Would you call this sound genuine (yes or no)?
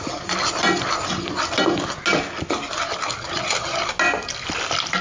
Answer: yes